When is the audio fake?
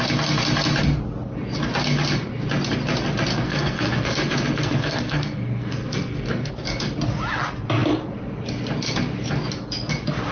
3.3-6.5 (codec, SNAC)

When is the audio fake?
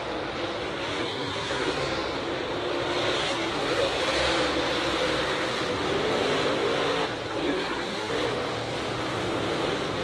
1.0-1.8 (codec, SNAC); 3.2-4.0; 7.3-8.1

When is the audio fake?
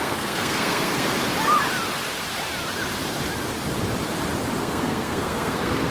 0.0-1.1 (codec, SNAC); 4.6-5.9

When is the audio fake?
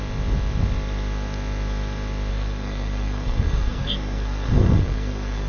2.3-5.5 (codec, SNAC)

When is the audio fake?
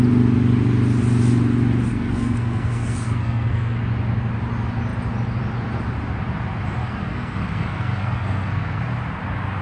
1.9-3.8 (codec, SNAC); 6.8-8.8